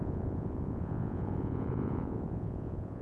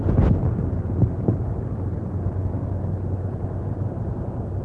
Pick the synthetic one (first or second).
first